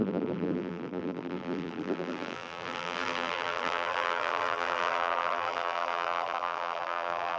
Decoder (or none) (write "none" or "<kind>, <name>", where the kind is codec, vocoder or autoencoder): vocoder, BigVGAN v2